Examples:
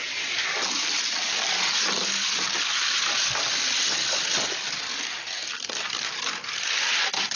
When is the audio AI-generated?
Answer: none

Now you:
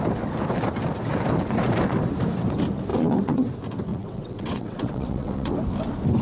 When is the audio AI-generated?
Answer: 2.9-3.5 (vocoder, WaveNeXt); 3.9-5.5

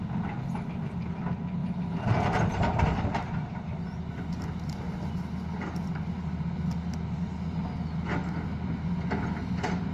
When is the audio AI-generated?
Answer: none

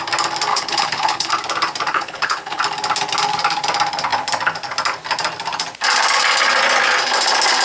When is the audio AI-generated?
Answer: 0.5-1.3 (codec, HILCodec); 1.9-2.6

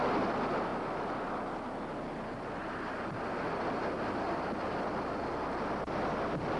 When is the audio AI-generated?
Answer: none

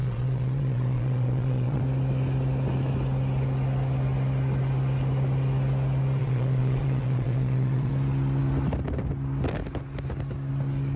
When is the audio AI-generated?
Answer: 0.0-1.8 (vocoder, Vocos); 6.2-7.9

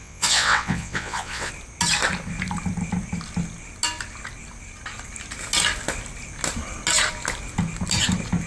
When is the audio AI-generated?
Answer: 0.0-1.5 (vocoder, WaveNeXt)